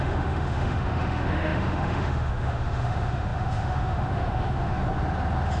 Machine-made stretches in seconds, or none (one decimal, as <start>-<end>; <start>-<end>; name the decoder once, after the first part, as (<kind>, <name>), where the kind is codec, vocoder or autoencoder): 0.0-4.8 (autoencoder, DAC-VAE)